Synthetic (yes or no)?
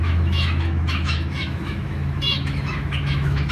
yes